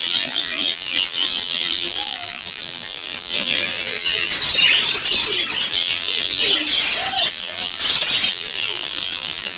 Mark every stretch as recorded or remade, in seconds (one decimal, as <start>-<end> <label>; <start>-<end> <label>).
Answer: 0.0-4.3 remade; 4.3-5.7 recorded; 5.7-6.4 remade; 6.4-7.3 recorded; 7.3-7.8 remade; 7.8-8.3 recorded; 8.3-9.6 remade